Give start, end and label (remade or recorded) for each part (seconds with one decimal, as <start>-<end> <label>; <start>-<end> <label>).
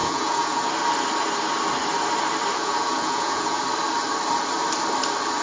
0.0-0.7 remade; 0.7-2.6 recorded; 2.6-3.6 remade; 3.6-5.4 recorded